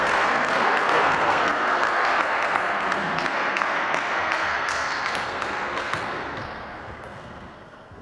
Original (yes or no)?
no